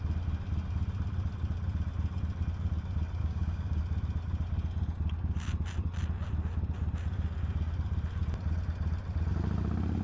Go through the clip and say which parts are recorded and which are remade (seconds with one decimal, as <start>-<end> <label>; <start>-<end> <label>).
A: 0.0-3.2 recorded; 3.2-3.8 remade; 3.8-10.0 recorded